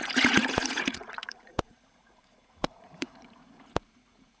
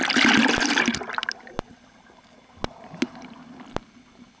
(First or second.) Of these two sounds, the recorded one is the second